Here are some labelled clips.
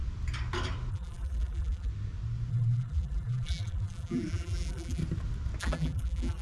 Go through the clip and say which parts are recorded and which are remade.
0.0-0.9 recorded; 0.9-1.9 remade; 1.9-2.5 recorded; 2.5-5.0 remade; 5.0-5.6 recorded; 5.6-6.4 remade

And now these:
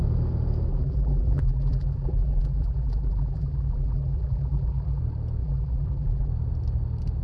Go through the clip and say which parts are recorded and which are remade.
0.0-0.7 recorded; 0.7-5.0 remade; 5.0-5.4 recorded; 5.4-6.3 remade; 6.3-7.2 recorded

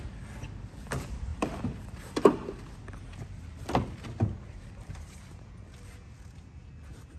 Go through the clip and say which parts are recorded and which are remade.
0.0-7.2 recorded

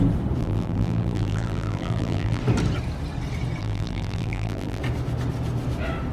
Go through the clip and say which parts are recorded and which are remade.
0.0-0.4 recorded; 0.4-2.4 remade; 2.4-3.6 recorded; 3.6-4.8 remade; 4.8-6.1 recorded

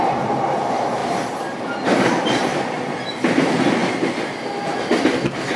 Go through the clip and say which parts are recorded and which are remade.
0.0-1.0 recorded; 1.0-3.1 remade; 3.1-5.6 recorded

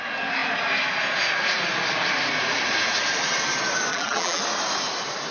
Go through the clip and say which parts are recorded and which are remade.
0.0-3.9 recorded; 3.9-4.4 remade; 4.4-5.3 recorded

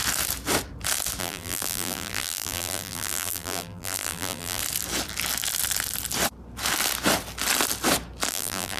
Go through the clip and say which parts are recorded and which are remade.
0.0-1.2 recorded; 1.2-4.6 remade; 4.6-8.3 recorded; 8.3-8.8 remade